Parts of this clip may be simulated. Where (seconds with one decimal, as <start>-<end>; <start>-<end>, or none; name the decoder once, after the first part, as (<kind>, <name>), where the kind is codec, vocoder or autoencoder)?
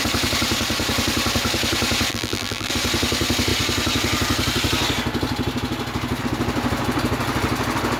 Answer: 2.1-2.7 (vocoder, BigVGAN v2)